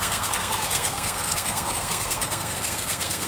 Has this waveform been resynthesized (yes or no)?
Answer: yes